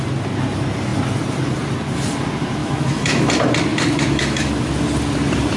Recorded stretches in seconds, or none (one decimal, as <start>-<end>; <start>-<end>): 0.0-2.6; 3.3-3.7; 4.5-5.6